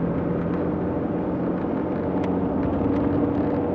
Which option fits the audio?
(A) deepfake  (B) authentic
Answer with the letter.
B